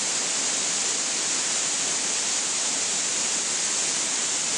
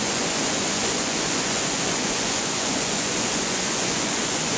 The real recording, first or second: first